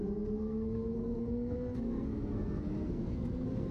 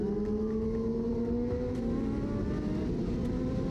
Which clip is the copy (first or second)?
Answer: first